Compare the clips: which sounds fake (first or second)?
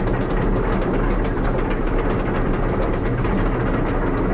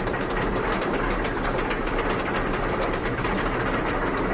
second